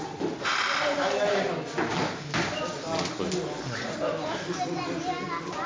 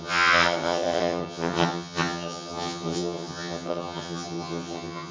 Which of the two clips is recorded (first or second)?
first